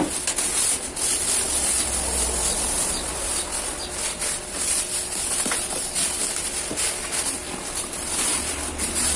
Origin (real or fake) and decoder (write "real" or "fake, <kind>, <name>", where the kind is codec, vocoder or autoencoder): real